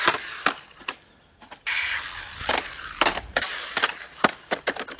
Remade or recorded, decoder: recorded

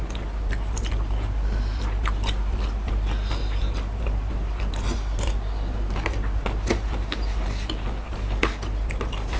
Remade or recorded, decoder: recorded